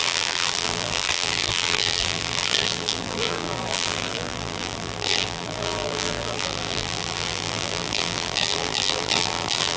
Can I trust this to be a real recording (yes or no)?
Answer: no